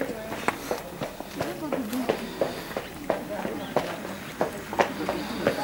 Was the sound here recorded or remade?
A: recorded